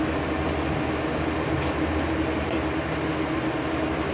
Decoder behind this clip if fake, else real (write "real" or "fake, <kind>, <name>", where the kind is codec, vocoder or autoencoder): real